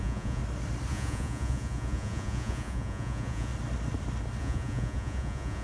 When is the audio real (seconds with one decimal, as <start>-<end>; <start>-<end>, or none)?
0.4-0.9; 3.5-4.4